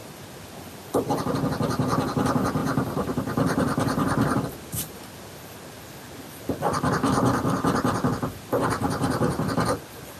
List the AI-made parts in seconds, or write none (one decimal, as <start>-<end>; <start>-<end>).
2.6-5.1